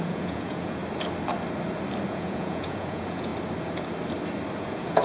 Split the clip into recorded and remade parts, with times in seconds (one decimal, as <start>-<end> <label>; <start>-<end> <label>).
0.0-0.8 remade; 0.8-2.1 recorded; 2.1-3.3 remade; 3.3-4.6 recorded; 4.6-5.0 remade